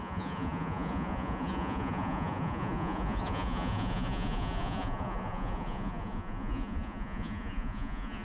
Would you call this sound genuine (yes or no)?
no